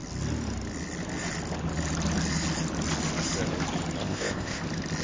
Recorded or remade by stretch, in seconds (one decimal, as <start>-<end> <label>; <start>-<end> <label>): 0.0-4.0 recorded; 4.0-4.6 remade; 4.6-5.0 recorded